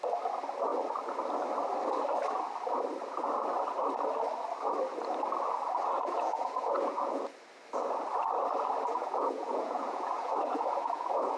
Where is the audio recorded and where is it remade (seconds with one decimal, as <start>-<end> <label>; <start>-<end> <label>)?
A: 0.0-6.1 recorded; 6.1-7.2 remade; 7.2-8.9 recorded; 8.9-11.4 remade